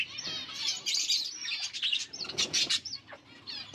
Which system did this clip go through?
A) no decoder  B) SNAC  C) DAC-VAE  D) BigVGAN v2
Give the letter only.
A